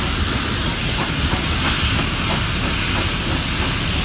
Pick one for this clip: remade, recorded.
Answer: recorded